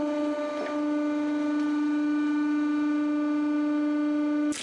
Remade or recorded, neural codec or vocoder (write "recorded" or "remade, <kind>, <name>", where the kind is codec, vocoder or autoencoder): recorded